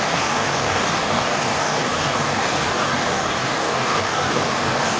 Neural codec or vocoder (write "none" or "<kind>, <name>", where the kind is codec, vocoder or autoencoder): codec, DAC